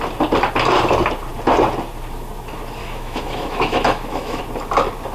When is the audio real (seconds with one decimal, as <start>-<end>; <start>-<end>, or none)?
0.0-2.8; 4.4-5.1